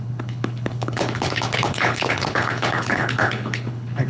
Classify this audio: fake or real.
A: fake